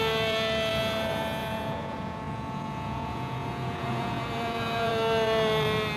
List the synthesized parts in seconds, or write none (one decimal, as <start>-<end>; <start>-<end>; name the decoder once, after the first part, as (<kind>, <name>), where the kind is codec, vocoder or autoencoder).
1.4-4.9 (vocoder, Vocos)